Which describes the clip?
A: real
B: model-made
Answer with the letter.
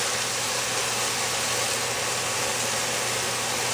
A